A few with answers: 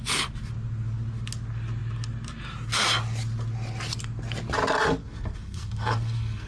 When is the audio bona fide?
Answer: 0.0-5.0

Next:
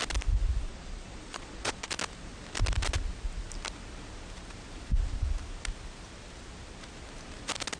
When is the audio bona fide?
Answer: 0.0-0.7; 1.9-7.8

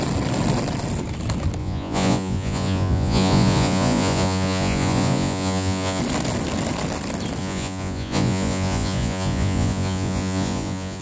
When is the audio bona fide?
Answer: 0.0-1.6; 6.0-7.4

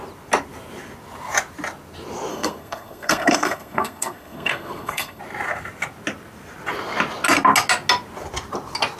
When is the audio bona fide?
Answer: 0.0-2.3; 5.2-9.0

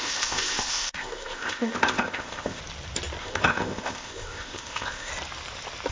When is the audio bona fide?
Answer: 2.6-3.2; 5.1-5.9